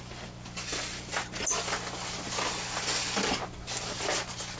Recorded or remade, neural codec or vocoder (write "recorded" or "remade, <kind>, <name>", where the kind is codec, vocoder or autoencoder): recorded